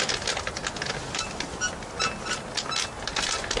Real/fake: real